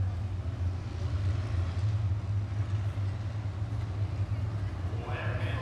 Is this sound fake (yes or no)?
no